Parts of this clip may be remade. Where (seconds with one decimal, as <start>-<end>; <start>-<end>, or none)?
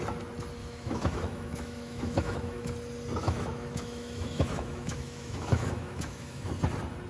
0.6-2.7; 3.2-6.5